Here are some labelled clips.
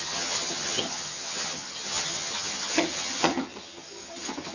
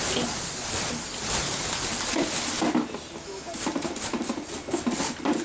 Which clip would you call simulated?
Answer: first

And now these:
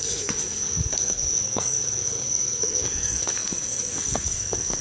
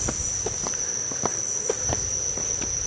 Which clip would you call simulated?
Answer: first